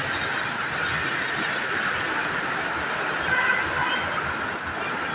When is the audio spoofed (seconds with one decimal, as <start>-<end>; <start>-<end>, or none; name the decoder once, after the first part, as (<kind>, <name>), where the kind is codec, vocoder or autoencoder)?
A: none